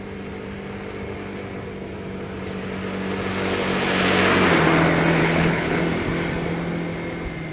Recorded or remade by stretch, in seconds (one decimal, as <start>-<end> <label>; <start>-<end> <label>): 0.0-5.2 recorded; 5.2-5.8 remade; 5.8-7.5 recorded